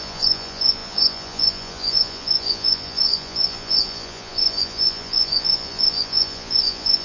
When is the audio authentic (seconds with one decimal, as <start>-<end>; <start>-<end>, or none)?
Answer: none